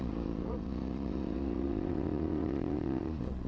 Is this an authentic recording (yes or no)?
no